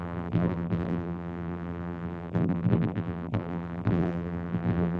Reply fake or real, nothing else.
fake